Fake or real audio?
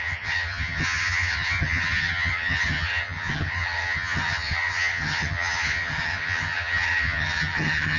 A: fake